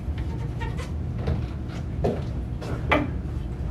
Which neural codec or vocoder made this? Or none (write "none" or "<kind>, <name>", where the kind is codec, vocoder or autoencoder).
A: none